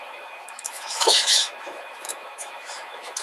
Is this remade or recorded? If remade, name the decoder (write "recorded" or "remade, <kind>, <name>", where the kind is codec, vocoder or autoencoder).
remade, autoencoder, DAC-VAE